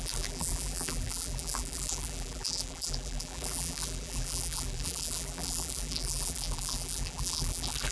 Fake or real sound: fake